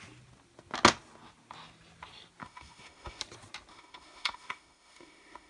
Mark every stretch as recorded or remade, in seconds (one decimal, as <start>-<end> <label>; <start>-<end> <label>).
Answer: 0.0-2.4 recorded; 2.4-3.2 remade; 3.2-3.7 recorded; 3.7-5.5 remade